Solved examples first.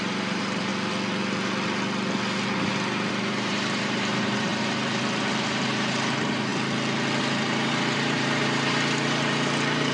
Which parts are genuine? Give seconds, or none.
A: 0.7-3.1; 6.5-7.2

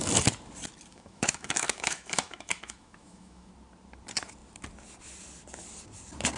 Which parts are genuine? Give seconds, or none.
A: 0.0-0.9; 3.5-6.4